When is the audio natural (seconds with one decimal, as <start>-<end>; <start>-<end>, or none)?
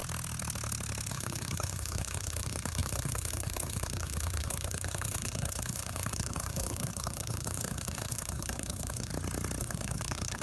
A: 0.0-1.1; 9.1-9.6